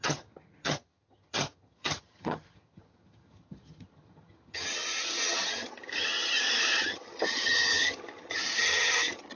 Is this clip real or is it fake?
fake